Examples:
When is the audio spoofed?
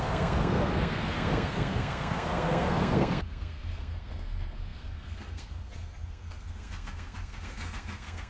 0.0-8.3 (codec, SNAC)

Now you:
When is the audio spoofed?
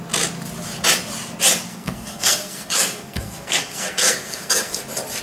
1.7-4.8 (codec, SNAC)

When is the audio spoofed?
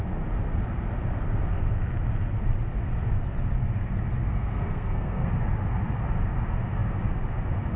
4.3-5.3 (codec, SNAC)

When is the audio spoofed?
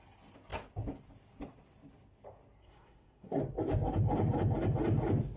2.6-3.4 (codec, SNAC)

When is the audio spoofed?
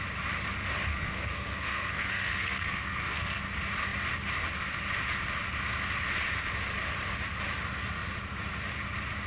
0.9-3.4 (codec, SNAC)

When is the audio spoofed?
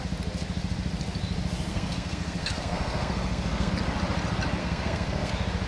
1.7-3.7 (codec, SNAC); 4.6-5.3